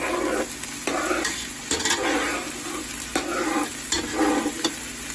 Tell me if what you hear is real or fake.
real